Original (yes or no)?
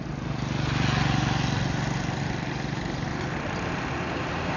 yes